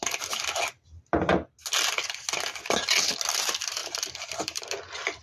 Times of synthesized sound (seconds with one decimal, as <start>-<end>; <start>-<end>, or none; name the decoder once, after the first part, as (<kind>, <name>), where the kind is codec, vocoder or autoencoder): 3.8-5.2 (vocoder, BigVGAN v2)